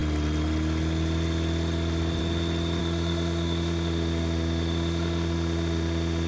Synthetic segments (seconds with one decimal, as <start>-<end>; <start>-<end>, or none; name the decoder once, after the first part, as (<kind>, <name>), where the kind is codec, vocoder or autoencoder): 2.8-6.3 (autoencoder, DAC-VAE)